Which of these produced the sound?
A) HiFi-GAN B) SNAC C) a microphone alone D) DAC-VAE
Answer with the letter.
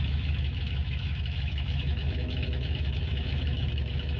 D